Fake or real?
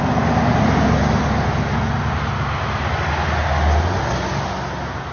real